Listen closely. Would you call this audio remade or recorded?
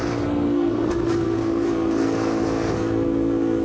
remade